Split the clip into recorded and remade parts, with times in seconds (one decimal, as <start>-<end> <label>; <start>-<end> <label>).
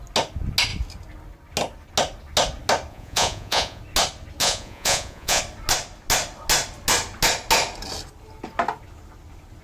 0.0-2.9 recorded; 2.9-3.8 remade; 3.8-4.4 recorded; 4.4-5.4 remade; 5.4-9.6 recorded